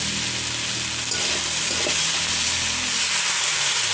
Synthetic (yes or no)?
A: no